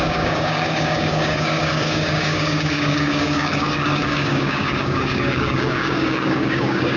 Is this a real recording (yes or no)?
no